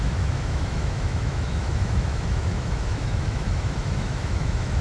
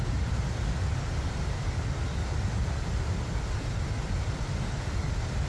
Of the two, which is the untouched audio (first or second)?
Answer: second